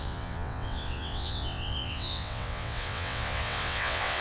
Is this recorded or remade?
remade